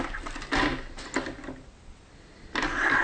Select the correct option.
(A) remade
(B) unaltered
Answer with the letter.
B